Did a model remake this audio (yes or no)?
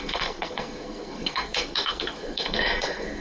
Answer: yes